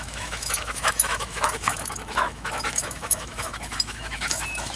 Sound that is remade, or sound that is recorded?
remade